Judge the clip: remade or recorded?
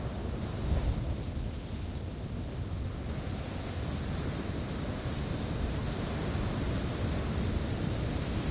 recorded